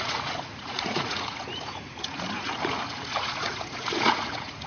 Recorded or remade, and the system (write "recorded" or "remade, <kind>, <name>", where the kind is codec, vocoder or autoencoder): remade, vocoder, Vocos